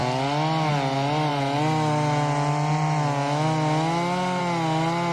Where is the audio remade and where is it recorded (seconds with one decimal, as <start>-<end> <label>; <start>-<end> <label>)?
0.0-5.1 recorded